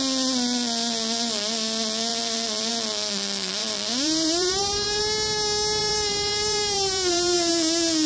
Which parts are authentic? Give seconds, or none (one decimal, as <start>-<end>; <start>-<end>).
0.0-2.1; 2.7-3.6; 5.0-5.8; 7.5-8.1